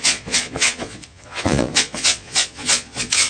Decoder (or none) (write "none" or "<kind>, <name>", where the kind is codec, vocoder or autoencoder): vocoder, Vocos